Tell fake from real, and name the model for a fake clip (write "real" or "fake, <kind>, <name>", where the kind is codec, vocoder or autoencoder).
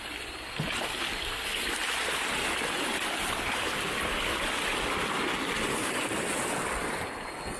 real